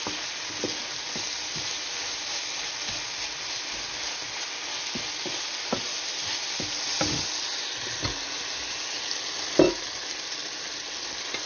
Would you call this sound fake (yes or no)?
no